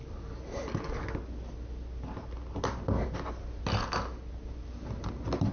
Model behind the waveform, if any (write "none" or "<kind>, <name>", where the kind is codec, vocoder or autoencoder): none